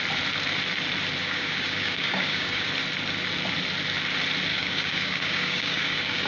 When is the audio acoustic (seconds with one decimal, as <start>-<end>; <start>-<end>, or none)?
0.0-1.2; 2.7-4.5